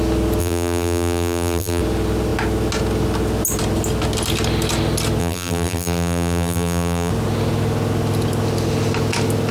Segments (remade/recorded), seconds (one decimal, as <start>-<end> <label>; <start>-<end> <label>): 0.0-0.4 recorded; 0.4-1.8 remade; 1.8-5.2 recorded; 5.2-7.1 remade; 7.1-9.5 recorded